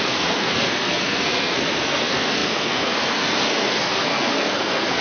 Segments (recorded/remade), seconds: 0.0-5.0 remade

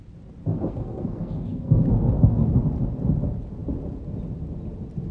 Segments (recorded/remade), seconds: 0.0-0.5 recorded; 0.5-2.5 remade; 2.5-5.1 recorded

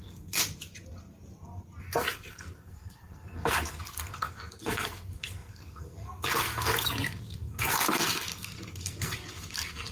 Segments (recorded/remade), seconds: 0.0-0.4 remade; 0.4-1.8 recorded; 1.8-9.9 remade